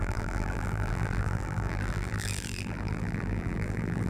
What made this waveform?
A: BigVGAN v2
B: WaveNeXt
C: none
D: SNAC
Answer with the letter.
A